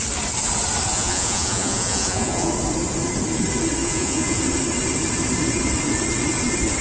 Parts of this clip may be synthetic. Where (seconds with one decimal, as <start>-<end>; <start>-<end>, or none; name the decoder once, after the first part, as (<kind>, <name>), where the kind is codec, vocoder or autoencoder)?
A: 0.9-2.5 (vocoder, Vocos); 3.8-4.4